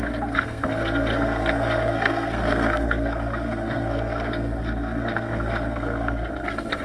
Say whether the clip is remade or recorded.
remade